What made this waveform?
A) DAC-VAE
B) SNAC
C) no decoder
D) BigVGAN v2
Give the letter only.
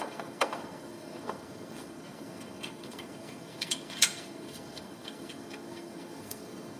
B